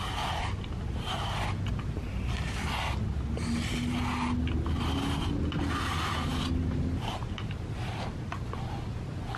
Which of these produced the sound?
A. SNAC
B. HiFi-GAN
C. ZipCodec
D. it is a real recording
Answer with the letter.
D